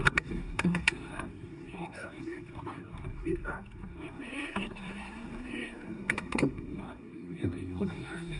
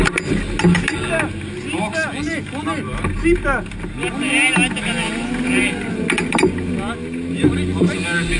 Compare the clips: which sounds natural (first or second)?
second